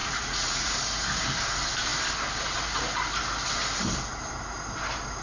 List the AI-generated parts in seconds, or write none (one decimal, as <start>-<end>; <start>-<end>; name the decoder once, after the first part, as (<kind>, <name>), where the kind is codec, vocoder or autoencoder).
0.0-0.7 (vocoder, Vocos)